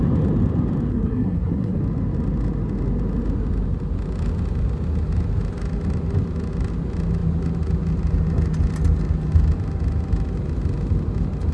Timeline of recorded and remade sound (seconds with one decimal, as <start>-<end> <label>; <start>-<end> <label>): 0.0-0.9 recorded; 0.9-1.8 remade; 1.8-11.5 recorded